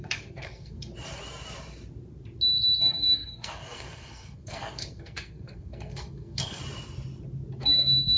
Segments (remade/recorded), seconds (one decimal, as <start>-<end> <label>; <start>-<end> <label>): 0.0-0.9 remade; 0.9-2.8 recorded; 2.8-6.6 remade; 6.6-7.6 recorded; 7.6-8.2 remade